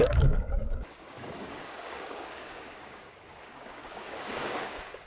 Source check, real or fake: fake